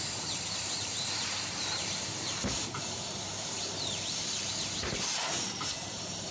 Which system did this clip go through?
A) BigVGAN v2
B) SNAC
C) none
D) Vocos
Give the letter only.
A